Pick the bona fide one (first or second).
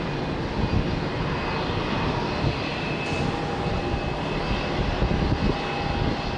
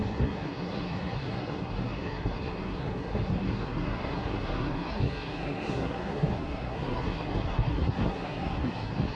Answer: first